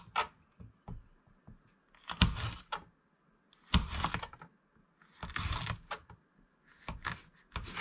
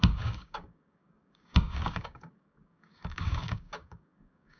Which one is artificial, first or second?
second